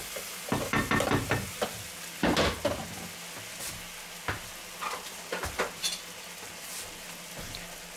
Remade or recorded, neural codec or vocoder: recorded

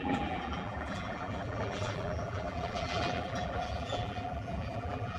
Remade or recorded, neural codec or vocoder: remade, vocoder, BigVGAN v2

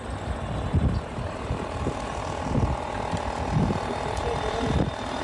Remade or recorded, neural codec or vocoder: recorded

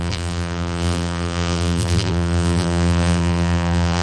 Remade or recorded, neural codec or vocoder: remade, vocoder, BigVGAN v2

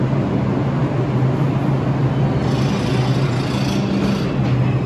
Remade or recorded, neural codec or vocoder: recorded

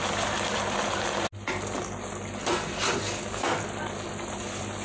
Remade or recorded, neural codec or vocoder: recorded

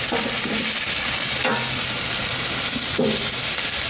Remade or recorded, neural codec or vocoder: recorded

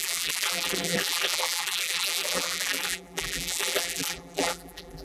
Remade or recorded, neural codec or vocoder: remade, vocoder, BigVGAN v2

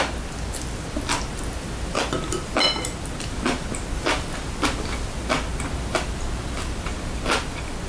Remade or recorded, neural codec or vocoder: recorded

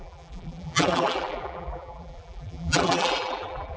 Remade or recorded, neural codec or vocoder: remade, vocoder, BigVGAN v2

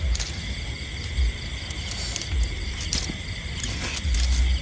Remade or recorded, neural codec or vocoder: recorded